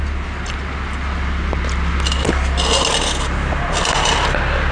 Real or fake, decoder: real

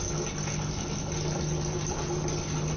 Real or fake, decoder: real